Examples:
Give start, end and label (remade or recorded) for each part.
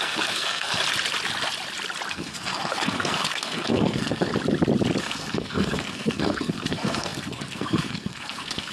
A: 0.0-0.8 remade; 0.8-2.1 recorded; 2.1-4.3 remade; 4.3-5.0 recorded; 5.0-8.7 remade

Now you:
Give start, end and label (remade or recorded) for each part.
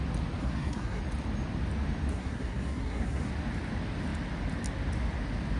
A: 0.0-0.4 recorded; 0.4-1.0 remade; 1.0-2.1 recorded; 2.1-3.3 remade; 3.3-5.6 recorded